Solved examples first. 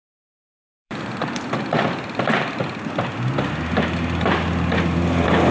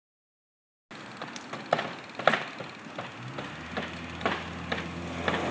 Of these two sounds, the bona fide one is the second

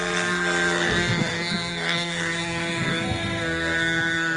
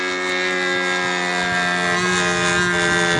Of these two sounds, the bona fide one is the second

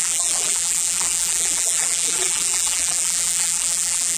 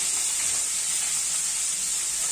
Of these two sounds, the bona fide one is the second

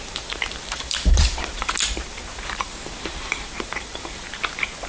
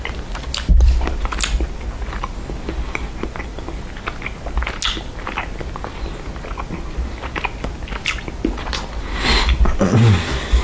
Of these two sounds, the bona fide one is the second